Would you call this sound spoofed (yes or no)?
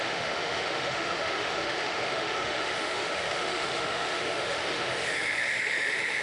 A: yes